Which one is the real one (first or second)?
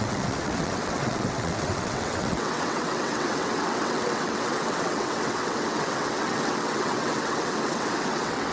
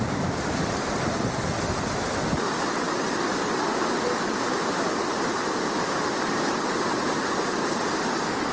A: second